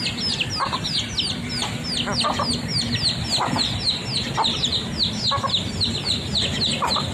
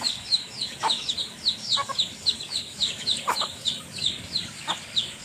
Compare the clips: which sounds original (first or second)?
first